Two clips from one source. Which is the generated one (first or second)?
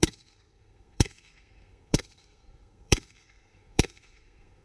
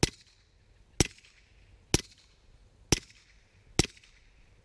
first